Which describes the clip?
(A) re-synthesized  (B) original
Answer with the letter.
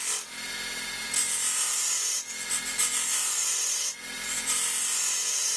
B